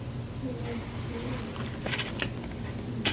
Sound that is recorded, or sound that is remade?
recorded